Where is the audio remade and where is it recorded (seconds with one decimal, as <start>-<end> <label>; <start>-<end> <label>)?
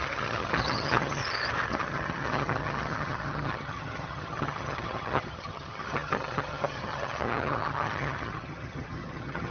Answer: 0.0-1.2 remade; 1.2-1.7 recorded; 1.7-9.5 remade